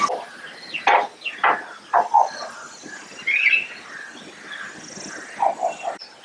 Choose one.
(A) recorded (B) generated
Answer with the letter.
A